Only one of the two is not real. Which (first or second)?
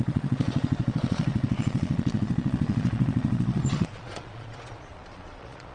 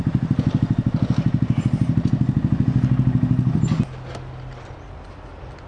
first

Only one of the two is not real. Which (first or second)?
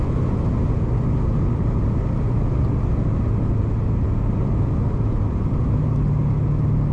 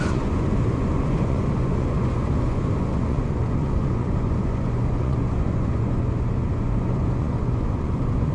second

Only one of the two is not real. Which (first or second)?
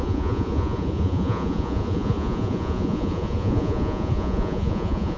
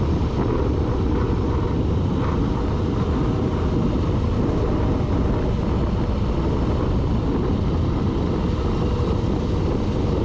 first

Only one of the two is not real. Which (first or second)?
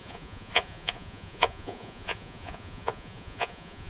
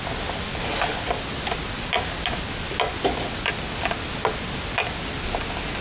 first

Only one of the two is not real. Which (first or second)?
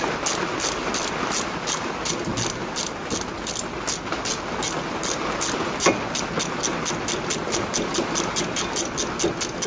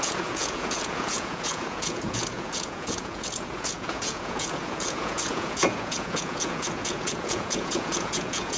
second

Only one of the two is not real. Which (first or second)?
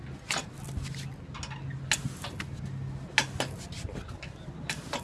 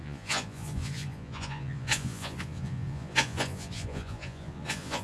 second